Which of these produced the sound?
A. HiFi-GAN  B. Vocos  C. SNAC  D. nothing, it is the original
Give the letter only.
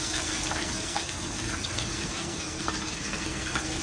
C